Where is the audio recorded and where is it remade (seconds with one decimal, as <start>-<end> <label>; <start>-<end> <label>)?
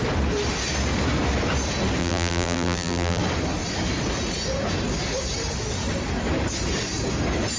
0.0-2.0 recorded; 2.0-3.2 remade; 3.2-7.6 recorded